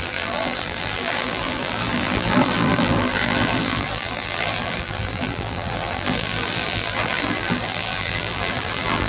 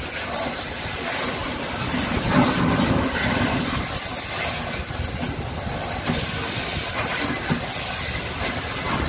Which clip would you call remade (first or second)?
first